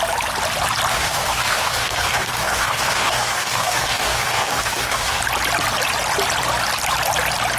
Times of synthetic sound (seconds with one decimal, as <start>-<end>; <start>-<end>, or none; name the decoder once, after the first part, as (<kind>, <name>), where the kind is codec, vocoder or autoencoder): 0.9-5.2 (codec, DAC)